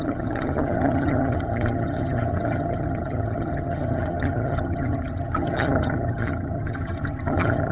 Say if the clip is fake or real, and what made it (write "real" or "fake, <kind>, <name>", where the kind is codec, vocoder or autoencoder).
fake, vocoder, HiFi-GAN